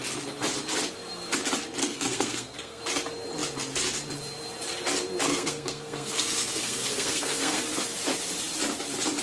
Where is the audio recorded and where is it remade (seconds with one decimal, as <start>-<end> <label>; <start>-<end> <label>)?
0.0-1.8 recorded; 1.8-2.8 remade; 2.8-5.3 recorded; 5.3-7.6 remade; 7.6-9.2 recorded